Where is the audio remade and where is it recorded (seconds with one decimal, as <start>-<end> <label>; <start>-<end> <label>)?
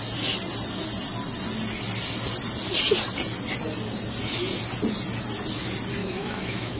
0.0-6.0 recorded; 6.0-6.8 remade